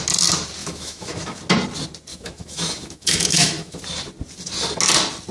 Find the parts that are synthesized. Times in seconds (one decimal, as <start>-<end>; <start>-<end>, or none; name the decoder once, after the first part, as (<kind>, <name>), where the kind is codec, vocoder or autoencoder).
0.6-1.4 (autoencoder, DAC-VAE); 2.1-3.8